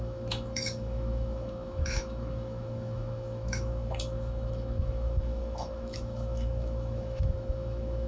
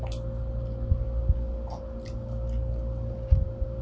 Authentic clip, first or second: second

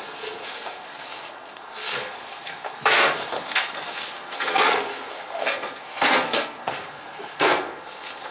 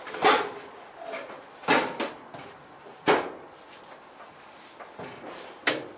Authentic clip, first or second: second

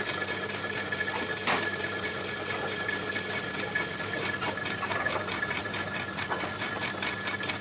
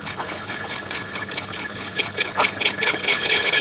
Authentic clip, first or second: first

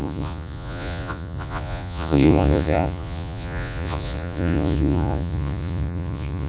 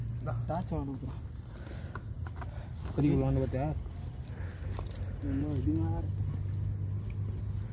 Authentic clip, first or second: second